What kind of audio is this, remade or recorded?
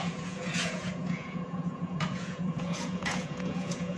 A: remade